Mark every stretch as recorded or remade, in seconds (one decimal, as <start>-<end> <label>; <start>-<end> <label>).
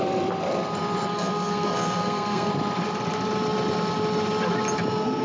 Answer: 0.0-1.1 recorded; 1.1-2.5 remade; 2.5-5.2 recorded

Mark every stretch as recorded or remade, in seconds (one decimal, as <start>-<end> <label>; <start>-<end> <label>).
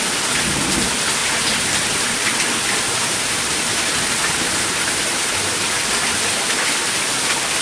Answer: 0.0-1.2 recorded; 1.2-5.8 remade; 5.8-7.6 recorded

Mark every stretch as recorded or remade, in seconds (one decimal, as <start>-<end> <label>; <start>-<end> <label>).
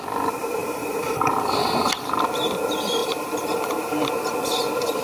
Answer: 0.0-0.6 recorded; 0.6-2.2 remade; 2.2-3.0 recorded; 3.0-4.1 remade; 4.1-5.0 recorded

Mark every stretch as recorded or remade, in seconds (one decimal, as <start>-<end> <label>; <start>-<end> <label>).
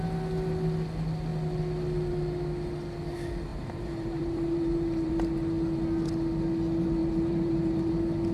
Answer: 0.0-3.5 recorded; 3.5-5.1 remade; 5.1-7.0 recorded; 7.0-7.9 remade; 7.9-8.3 recorded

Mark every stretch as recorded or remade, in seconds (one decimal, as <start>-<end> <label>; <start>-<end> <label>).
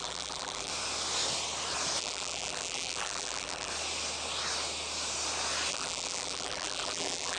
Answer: 0.0-0.7 remade; 0.7-2.0 recorded; 2.0-3.7 remade; 3.7-5.7 recorded; 5.7-7.4 remade